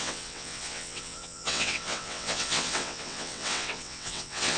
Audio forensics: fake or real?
fake